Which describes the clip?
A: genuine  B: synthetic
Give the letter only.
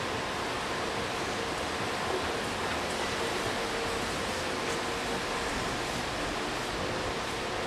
A